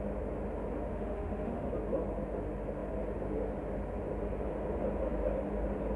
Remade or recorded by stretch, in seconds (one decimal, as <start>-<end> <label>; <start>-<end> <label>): 0.0-0.9 recorded; 0.9-1.7 remade; 1.7-6.0 recorded